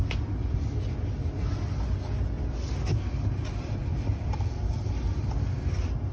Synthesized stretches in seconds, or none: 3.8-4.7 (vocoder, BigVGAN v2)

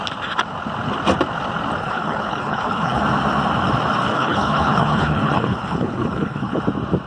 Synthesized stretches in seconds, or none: 1.8-3.0 (codec, HILCodec); 4.1-6.6

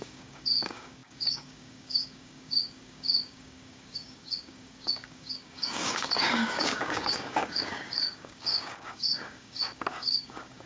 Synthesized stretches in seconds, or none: 0.0-10.7 (codec, DAC)

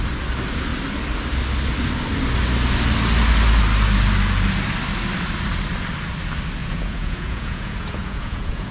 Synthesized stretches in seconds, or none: 6.6-8.7 (vocoder, Vocos)

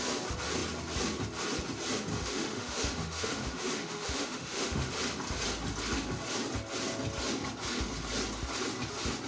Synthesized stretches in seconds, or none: 2.1-4.9 (autoencoder, DAC-VAE)

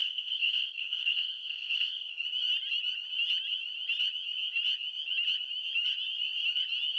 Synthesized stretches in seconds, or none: 0.0-2.1 (codec, SNAC)